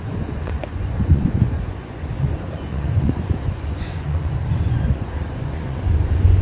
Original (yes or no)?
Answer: no